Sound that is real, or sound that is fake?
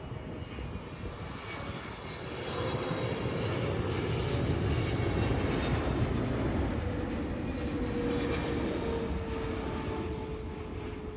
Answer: real